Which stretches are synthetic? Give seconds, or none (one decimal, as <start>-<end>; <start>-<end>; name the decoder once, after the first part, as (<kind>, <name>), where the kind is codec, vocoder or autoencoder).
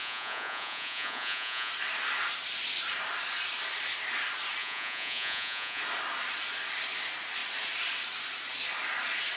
0.0-1.7 (vocoder, Vocos); 4.6-5.8